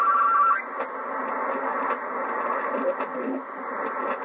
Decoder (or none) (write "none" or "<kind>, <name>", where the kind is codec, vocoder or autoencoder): none